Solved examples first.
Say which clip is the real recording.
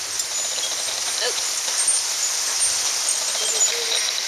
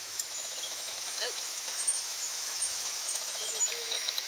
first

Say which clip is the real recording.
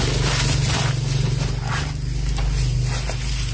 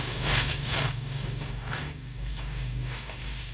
first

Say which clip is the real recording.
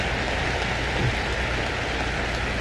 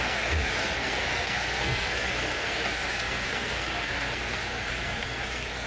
first